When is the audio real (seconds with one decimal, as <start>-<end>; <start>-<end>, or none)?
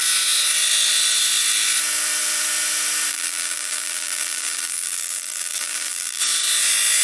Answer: 0.0-3.1; 6.2-7.0